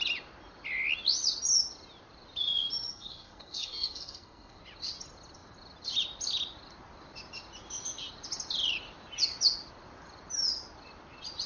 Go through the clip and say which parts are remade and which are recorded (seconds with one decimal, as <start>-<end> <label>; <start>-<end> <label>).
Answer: 0.0-2.9 recorded; 2.9-4.6 remade; 4.6-11.5 recorded